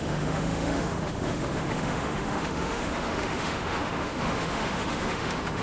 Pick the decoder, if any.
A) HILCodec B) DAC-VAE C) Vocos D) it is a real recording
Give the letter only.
B